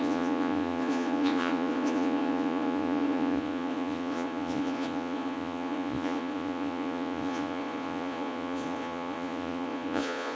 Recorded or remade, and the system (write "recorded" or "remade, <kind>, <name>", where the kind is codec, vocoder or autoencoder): remade, vocoder, Vocos